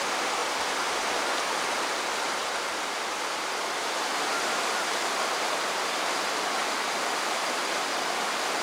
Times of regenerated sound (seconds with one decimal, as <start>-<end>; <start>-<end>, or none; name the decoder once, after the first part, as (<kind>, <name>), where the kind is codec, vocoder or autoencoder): none